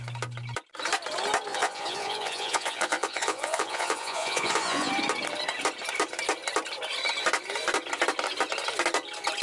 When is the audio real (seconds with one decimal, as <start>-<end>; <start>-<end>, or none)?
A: 0.0-1.5; 4.9-9.4